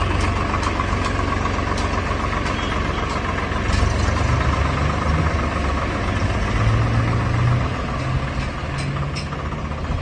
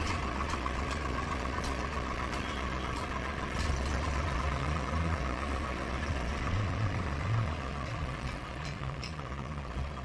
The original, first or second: first